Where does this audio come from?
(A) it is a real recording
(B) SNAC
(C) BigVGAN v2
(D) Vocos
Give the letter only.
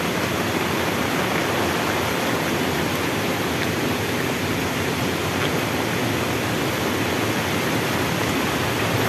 A